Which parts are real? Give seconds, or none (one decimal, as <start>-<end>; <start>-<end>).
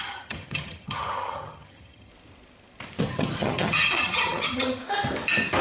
2.1-3.0; 4.8-5.6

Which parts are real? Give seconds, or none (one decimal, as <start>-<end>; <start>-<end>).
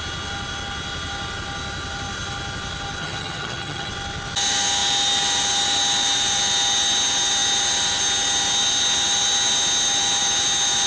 0.0-3.0; 3.9-10.9